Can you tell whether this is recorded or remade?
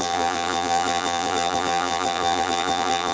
remade